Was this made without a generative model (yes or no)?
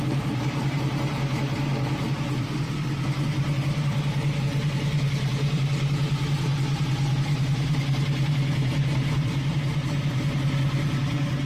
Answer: no